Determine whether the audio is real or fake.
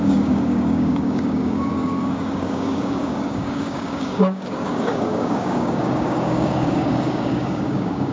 fake